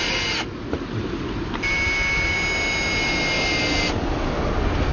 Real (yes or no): yes